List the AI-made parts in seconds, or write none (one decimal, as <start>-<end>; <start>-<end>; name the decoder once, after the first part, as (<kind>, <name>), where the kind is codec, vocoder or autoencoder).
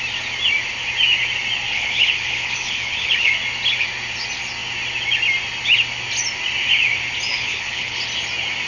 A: 1.7-3.3 (codec, HILCodec); 7.3-8.0